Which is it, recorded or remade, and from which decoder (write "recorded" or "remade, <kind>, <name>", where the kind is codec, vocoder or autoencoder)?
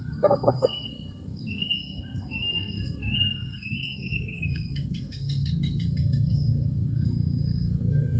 remade, codec, SNAC